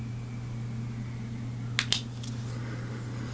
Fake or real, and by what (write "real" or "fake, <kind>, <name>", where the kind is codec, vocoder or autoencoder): real